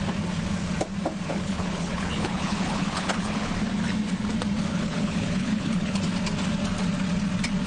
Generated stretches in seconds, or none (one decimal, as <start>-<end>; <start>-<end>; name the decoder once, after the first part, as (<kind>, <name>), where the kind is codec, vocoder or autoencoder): 1.3-3.5 (codec, HILCodec); 4.7-6.0